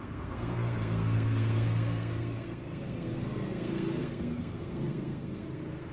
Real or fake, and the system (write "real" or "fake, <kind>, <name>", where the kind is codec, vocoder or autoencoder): fake, codec, SNAC